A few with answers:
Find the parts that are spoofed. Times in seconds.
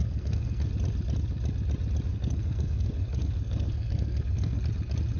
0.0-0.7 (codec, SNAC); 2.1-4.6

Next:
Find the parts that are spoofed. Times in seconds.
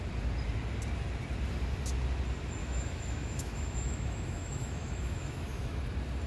2.6-5.8 (autoencoder, DAC-VAE)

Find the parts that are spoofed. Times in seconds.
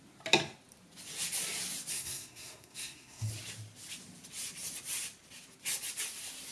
1.9-3.3 (codec, SNAC)